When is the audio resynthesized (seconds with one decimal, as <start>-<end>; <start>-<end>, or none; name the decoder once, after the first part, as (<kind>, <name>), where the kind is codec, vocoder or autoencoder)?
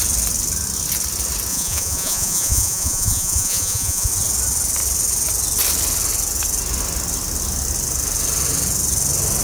1.5-4.1 (vocoder, Vocos)